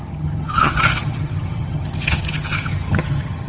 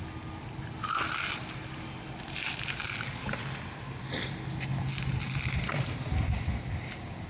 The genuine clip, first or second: second